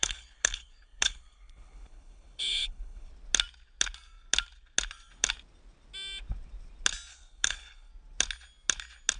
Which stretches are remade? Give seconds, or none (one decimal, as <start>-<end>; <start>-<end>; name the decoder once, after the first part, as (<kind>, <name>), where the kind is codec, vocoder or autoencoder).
0.0-3.1 (codec, HILCodec); 7.1-7.9